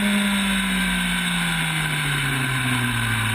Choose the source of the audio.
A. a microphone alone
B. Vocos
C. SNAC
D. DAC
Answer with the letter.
A